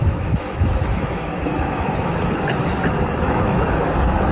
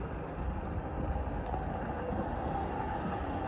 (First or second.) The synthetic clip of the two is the first